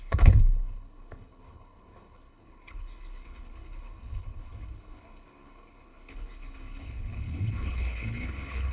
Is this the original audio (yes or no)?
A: no